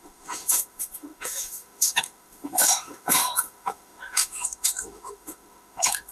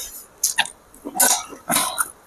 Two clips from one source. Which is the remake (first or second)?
first